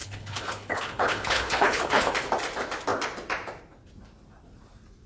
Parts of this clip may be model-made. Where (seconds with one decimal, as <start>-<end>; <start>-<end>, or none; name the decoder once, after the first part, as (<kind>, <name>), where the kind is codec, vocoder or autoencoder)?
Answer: 0.0-2.1 (codec, HILCodec)